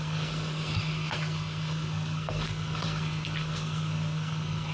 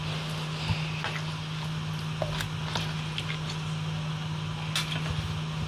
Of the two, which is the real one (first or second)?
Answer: second